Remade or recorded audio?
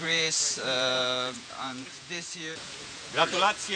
remade